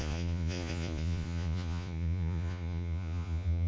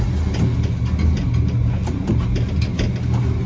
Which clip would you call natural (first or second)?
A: second